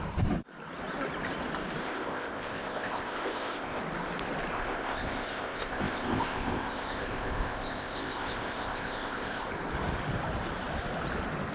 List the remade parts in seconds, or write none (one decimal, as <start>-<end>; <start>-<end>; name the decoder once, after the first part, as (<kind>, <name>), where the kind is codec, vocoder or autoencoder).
1.8-3.8 (codec, ZipCodec); 4.5-9.5